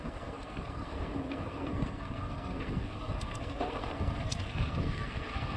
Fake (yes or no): yes